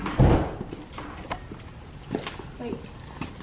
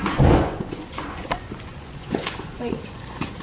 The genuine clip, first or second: first